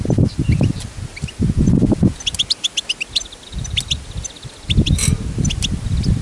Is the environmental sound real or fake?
real